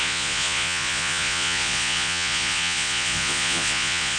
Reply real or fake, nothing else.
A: fake